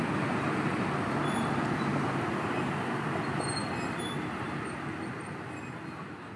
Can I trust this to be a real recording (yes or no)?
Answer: yes